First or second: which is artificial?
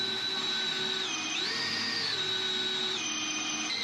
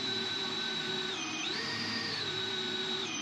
second